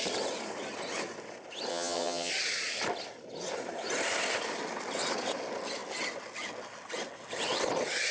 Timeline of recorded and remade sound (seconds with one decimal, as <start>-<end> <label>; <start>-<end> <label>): 0.0-1.7 recorded; 1.7-2.3 remade; 2.3-8.1 recorded